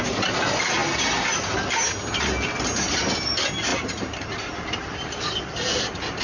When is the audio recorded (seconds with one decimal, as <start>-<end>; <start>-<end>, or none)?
0.0-3.7